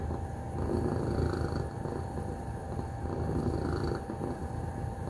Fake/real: fake